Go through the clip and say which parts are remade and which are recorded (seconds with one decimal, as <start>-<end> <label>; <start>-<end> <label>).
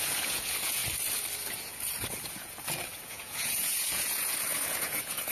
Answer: 0.0-0.8 remade; 0.8-2.2 recorded; 2.2-5.3 remade